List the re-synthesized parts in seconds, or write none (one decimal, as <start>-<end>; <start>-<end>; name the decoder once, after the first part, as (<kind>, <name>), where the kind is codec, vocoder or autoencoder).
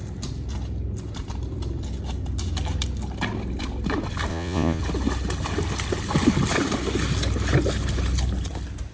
4.3-4.8 (vocoder, Vocos)